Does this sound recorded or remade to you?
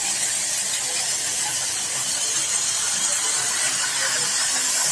recorded